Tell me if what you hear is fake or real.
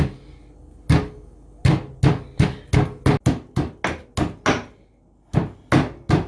real